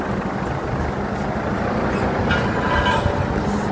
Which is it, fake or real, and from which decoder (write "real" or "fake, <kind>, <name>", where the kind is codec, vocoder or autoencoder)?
real